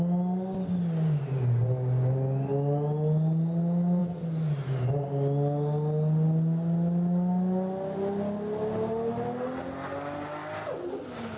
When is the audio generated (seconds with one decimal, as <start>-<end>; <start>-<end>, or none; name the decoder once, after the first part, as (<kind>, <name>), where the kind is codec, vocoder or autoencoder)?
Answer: none